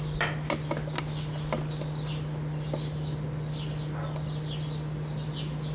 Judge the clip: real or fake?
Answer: real